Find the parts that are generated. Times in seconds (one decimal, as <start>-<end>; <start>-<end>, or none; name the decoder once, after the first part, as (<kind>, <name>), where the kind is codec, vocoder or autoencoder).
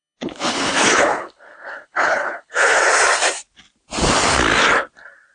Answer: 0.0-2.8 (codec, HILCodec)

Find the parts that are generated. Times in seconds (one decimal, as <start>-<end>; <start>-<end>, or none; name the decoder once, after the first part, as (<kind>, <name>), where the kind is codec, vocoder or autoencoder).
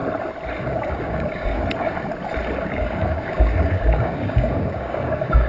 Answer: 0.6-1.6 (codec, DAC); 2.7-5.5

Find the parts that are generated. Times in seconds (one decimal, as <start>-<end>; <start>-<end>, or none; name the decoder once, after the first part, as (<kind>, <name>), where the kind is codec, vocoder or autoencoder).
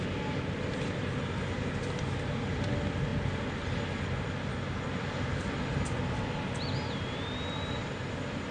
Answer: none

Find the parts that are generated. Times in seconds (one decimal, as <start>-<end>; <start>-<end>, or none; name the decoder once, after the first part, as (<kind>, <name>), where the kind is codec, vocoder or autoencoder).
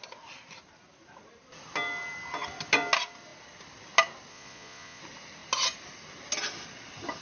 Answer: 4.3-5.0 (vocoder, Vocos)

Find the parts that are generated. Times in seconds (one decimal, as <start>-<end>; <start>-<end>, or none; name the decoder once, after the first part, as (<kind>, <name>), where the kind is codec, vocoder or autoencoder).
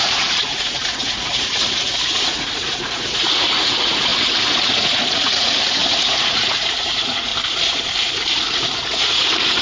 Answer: 0.0-7.3 (vocoder, Vocos); 8.5-9.6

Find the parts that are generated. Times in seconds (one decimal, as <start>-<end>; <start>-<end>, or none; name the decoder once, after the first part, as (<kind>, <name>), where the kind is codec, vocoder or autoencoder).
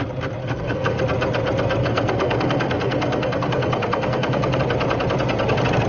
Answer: 0.4-1.0 (codec, SNAC); 1.8-4.6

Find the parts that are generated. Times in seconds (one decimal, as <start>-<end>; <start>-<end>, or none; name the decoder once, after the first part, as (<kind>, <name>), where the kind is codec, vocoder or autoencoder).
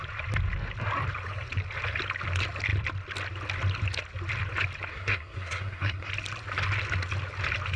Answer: 4.9-6.1 (codec, SNAC)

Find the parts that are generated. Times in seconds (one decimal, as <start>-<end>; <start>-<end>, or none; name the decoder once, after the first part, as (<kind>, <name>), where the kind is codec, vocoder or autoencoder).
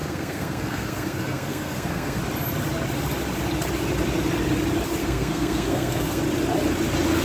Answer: 0.0-2.2 (codec, SNAC); 5.0-6.2